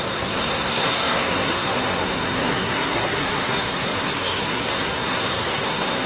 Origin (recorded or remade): remade